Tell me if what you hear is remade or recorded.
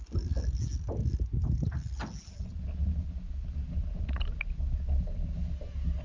recorded